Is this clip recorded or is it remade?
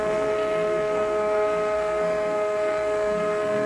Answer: remade